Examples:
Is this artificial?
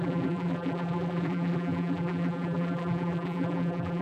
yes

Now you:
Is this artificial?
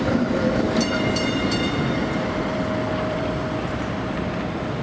yes